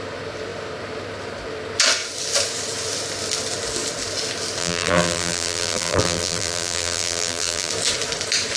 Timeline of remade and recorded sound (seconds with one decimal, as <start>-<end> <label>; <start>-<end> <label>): 0.0-4.6 recorded; 4.6-7.7 remade; 7.7-8.6 recorded